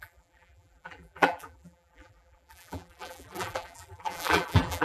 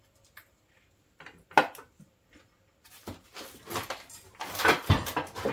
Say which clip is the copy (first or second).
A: first